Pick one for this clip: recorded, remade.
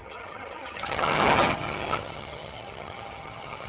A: remade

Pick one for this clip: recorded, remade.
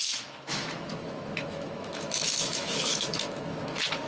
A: remade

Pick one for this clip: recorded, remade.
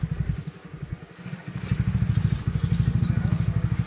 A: recorded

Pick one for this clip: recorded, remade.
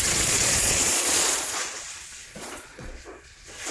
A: remade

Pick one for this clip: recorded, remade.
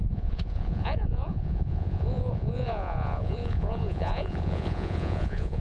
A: remade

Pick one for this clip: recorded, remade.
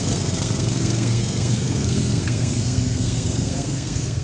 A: remade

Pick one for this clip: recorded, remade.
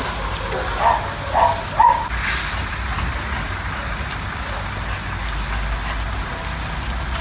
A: recorded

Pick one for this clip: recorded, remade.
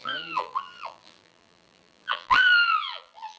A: remade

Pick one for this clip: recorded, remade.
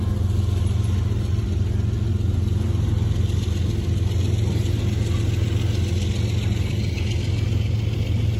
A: recorded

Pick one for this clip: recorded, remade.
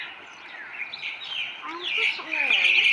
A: recorded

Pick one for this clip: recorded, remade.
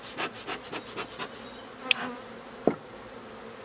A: recorded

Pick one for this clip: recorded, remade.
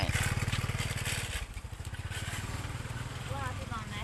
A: recorded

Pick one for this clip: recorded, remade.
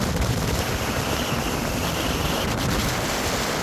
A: recorded